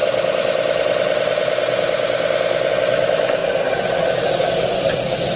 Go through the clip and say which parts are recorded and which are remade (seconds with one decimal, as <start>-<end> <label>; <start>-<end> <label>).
0.0-5.4 recorded